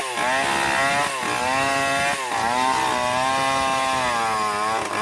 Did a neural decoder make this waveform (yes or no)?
no